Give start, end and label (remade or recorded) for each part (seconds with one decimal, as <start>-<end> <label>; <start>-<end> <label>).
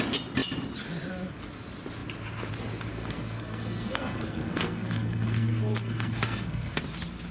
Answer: 0.0-2.9 recorded; 2.9-6.8 remade; 6.8-7.3 recorded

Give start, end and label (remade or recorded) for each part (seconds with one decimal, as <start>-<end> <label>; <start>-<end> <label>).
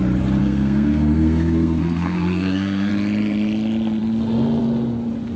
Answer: 0.0-0.4 recorded; 0.4-2.9 remade; 2.9-5.4 recorded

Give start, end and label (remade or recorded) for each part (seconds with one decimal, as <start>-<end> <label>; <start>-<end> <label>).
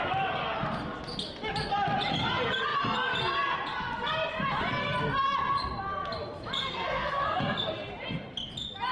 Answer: 0.0-6.6 recorded; 6.6-7.4 remade; 7.4-8.9 recorded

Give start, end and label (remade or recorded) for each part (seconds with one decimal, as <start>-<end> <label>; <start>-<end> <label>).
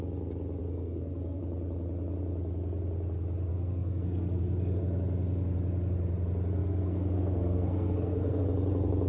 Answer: 0.0-0.6 recorded; 0.6-1.4 remade; 1.4-3.5 recorded; 3.5-4.8 remade; 4.8-6.6 recorded; 6.6-8.4 remade; 8.4-9.1 recorded